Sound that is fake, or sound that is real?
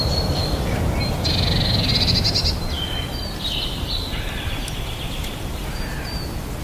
real